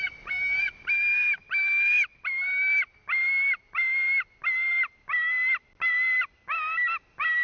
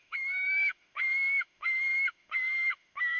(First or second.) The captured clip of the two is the first